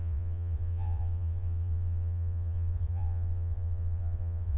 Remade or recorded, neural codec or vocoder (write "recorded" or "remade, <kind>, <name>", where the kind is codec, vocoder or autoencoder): remade, vocoder, Vocos